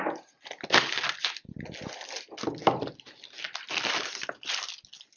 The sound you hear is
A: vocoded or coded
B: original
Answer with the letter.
B